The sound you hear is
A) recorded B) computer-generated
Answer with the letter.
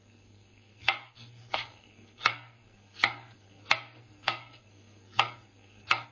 B